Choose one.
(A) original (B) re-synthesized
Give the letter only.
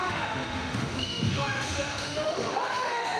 B